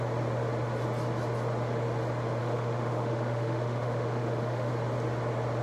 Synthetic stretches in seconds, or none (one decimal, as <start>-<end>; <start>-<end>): 2.4-4.7